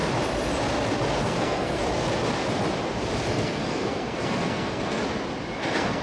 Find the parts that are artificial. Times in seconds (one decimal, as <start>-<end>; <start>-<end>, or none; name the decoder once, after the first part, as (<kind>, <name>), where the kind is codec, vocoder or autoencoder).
1.2-1.8 (codec, SNAC); 3.3-5.0; 5.6-6.0